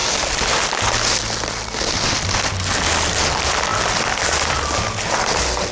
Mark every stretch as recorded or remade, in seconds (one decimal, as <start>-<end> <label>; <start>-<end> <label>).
0.0-5.7 recorded